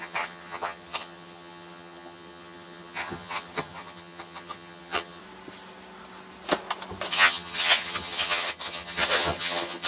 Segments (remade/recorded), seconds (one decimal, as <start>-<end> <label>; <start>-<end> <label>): 0.0-5.2 remade; 5.2-7.1 recorded; 7.1-9.9 remade